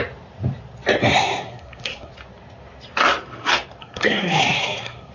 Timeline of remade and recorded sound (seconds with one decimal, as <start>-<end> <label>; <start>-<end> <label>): 0.0-1.0 recorded; 1.0-2.1 remade; 2.1-3.8 recorded; 3.8-5.1 remade